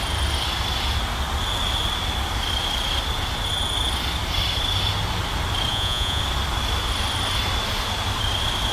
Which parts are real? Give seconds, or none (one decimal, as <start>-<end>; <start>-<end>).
0.0-5.7; 6.2-8.7